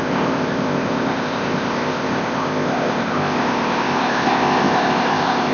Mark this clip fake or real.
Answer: fake